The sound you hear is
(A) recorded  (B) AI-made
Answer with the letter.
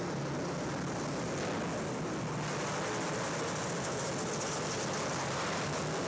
A